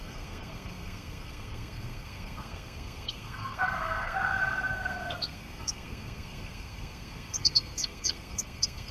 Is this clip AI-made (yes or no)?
yes